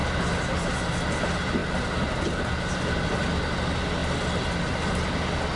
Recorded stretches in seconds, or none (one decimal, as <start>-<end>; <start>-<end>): 0.0-5.6